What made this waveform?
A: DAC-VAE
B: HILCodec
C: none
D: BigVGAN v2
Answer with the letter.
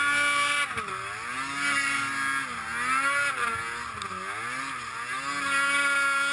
C